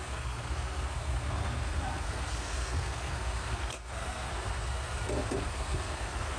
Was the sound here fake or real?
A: fake